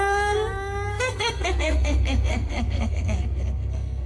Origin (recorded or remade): remade